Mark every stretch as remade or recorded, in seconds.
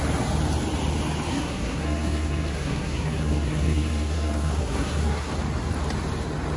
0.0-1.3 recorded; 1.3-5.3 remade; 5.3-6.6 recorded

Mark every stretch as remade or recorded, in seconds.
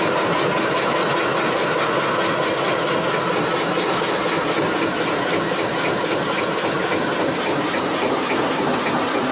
0.0-9.3 recorded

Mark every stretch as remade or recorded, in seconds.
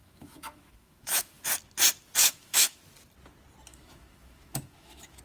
0.0-1.4 remade; 1.4-2.2 recorded; 2.2-2.8 remade; 2.8-3.7 recorded; 3.7-5.2 remade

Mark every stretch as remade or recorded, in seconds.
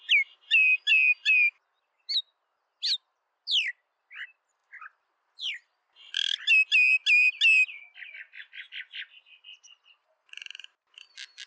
0.0-11.5 recorded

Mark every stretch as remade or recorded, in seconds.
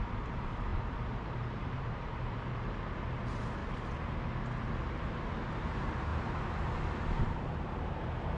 0.0-3.6 remade; 3.6-5.6 recorded; 5.6-6.1 remade; 6.1-7.2 recorded; 7.2-8.4 remade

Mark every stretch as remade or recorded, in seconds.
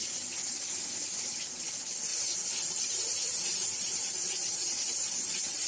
0.0-1.7 remade; 1.7-2.1 recorded; 2.1-5.3 remade; 5.3-5.7 recorded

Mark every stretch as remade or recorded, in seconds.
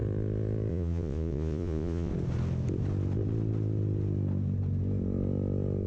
0.0-0.7 recorded; 0.7-2.1 remade; 2.1-5.9 recorded